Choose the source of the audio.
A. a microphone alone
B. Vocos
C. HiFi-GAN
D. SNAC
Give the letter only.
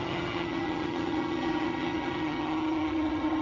C